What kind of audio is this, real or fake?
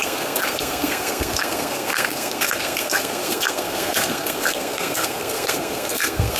fake